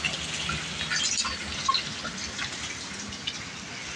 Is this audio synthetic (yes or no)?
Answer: no